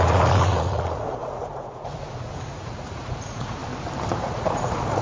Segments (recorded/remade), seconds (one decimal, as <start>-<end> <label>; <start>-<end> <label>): 0.0-3.6 remade; 3.6-4.2 recorded; 4.2-5.0 remade